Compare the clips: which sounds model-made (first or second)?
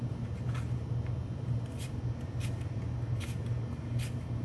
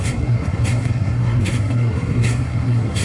second